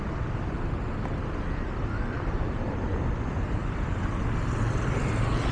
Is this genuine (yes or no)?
yes